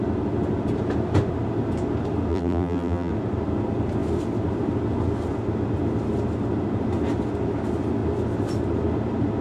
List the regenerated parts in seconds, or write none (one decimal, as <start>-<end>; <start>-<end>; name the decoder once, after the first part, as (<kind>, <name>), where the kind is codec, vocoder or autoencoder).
2.3-3.1 (vocoder, BigVGAN v2)